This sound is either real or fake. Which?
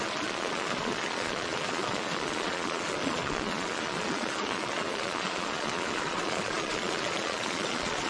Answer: fake